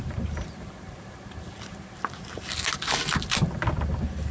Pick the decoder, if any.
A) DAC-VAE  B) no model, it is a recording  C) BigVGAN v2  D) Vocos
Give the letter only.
B